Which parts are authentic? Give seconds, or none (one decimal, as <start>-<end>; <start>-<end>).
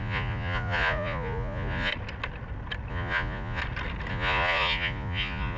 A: 1.9-2.9; 3.6-4.1